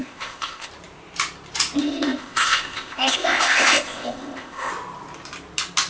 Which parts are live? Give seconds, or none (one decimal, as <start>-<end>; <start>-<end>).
0.7-1.8; 4.7-5.9